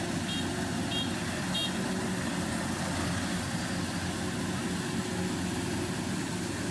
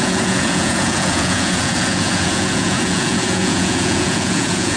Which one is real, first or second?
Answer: first